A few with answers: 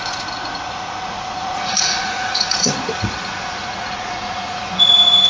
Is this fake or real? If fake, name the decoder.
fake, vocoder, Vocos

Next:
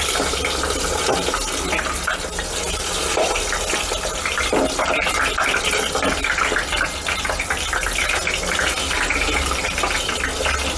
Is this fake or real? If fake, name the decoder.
real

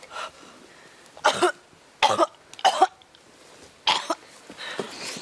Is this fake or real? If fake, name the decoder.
real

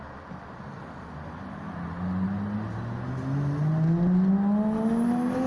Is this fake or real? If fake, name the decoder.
real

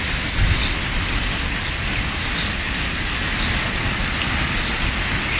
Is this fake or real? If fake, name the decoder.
real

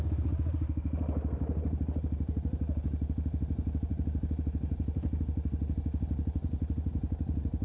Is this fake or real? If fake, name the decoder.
real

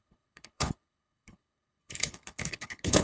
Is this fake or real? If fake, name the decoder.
fake, codec, HILCodec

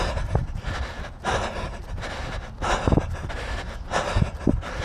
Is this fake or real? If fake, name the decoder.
real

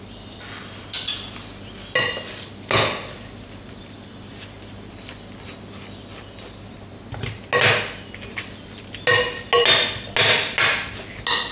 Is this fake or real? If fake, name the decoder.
real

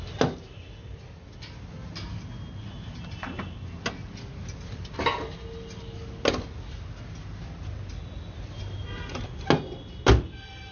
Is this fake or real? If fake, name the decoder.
real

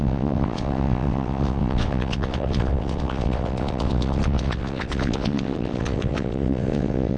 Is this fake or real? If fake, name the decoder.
fake, vocoder, WaveNeXt